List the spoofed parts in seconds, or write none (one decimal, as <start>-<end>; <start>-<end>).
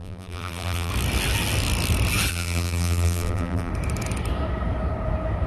0.0-0.9; 2.3-3.7